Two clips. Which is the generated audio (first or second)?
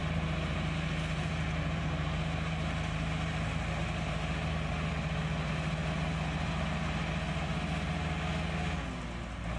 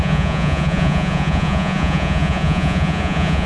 second